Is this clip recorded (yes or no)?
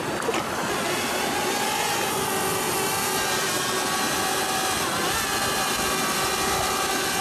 yes